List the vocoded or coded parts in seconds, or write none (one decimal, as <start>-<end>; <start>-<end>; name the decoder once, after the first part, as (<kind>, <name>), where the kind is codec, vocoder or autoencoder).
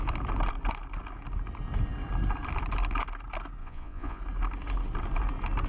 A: 3.6-4.2 (vocoder, Vocos)